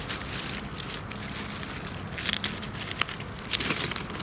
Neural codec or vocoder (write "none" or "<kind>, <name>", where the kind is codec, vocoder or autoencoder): none